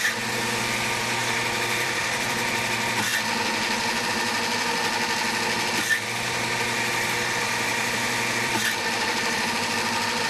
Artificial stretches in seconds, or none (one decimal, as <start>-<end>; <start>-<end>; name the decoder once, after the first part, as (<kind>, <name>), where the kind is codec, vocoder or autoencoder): 1.2-2.6 (vocoder, BigVGAN v2); 7.7-9.5